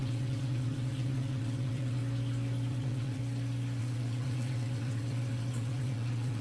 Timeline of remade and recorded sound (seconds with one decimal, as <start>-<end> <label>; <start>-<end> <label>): 0.0-2.0 remade; 2.0-2.7 recorded; 2.7-3.2 remade; 3.2-3.8 recorded; 3.8-6.4 remade